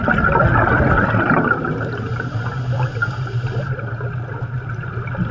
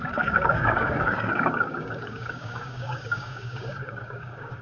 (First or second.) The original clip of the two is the first